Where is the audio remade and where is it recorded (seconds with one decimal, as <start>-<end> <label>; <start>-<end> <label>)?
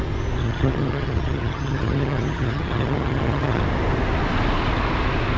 0.0-0.4 recorded; 0.4-3.6 remade; 3.6-5.4 recorded